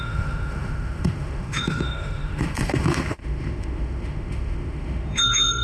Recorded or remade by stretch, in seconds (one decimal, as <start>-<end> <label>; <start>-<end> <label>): 0.0-5.6 remade